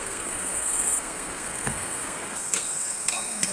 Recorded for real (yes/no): no